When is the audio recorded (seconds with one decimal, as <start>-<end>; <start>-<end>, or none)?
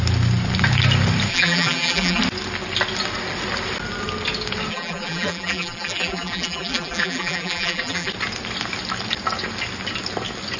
0.0-1.3; 2.2-4.7; 8.1-10.6